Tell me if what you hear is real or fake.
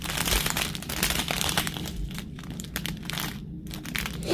fake